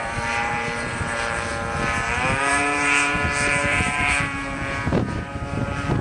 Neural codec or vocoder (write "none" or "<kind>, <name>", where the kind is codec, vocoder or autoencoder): vocoder, BigVGAN v2